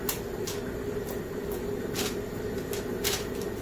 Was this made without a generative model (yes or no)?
yes